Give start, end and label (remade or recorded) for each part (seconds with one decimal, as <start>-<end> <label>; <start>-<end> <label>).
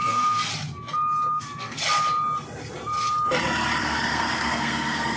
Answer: 0.0-0.5 remade; 0.5-1.3 recorded; 1.3-1.8 remade; 1.8-3.8 recorded; 3.8-5.2 remade